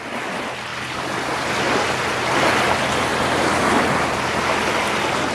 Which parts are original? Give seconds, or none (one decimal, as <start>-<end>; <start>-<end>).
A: 0.0-5.3

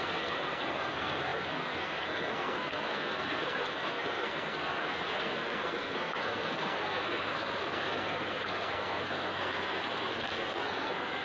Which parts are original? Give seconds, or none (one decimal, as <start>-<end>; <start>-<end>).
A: none